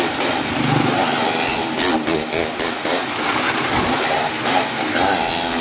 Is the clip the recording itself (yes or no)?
yes